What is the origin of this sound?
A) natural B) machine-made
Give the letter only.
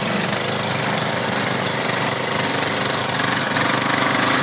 A